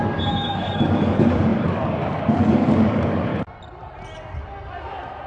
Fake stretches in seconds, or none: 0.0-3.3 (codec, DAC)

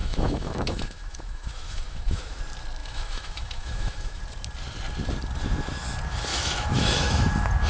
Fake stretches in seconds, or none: 0.0-2.4 (autoencoder, DAC-VAE); 2.8-4.2; 6.3-7.3

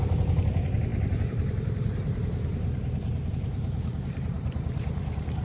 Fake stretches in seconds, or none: 0.0-5.4 (vocoder, BigVGAN v2)

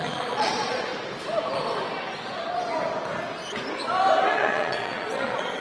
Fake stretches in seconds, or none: 0.0-0.9 (vocoder, Vocos); 4.3-5.6

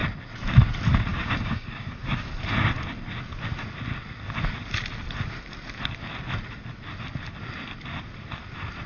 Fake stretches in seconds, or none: 1.1-2.3 (codec, DAC)

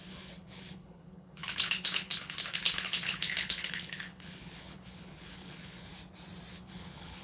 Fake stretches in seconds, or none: 0.0-5.9 (codec, HILCodec); 6.5-7.2

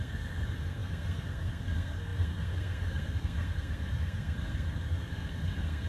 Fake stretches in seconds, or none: 0.0-5.9 (codec, SNAC)

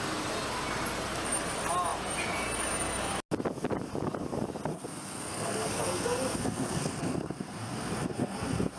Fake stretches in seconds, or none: 4.7-8.8 (codec, SNAC)